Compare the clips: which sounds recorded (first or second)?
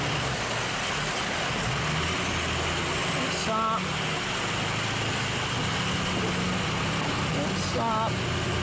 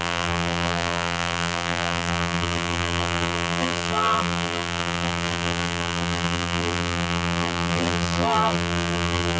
first